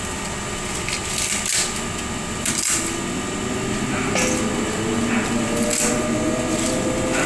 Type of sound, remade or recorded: recorded